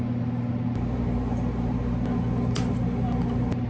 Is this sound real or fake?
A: real